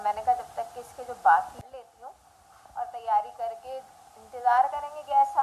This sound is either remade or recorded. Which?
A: recorded